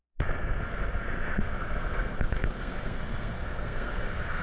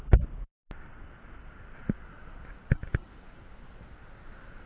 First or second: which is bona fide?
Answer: second